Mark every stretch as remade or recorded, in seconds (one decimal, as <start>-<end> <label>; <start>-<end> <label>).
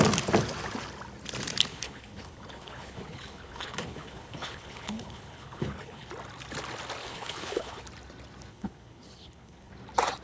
0.0-1.7 recorded; 1.7-6.1 remade; 6.1-7.0 recorded; 7.0-7.8 remade; 7.8-8.5 recorded; 8.5-9.7 remade; 9.7-10.2 recorded